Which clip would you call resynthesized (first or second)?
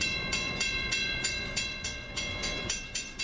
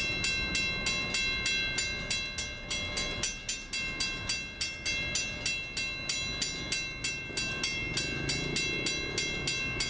first